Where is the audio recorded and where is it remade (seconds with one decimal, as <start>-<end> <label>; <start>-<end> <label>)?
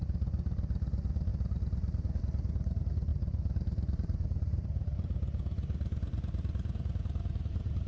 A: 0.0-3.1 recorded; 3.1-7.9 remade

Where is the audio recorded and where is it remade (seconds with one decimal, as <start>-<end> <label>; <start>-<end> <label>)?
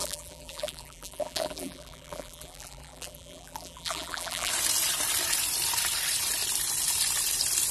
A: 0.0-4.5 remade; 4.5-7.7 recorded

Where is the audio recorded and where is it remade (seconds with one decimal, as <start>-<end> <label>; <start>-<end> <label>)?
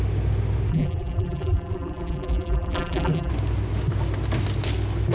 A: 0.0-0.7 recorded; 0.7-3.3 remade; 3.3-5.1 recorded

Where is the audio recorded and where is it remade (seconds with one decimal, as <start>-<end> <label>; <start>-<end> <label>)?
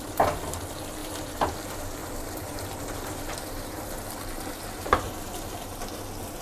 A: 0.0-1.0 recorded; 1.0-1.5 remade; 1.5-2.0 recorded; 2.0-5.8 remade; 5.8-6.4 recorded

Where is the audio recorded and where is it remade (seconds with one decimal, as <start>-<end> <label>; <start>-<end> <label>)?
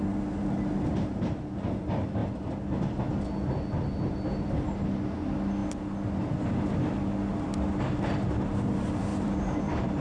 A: 0.0-9.1 recorded; 9.1-10.0 remade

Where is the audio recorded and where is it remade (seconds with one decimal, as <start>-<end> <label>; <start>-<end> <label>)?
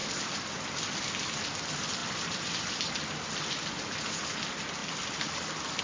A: 0.0-2.0 recorded; 2.0-2.8 remade; 2.8-5.8 recorded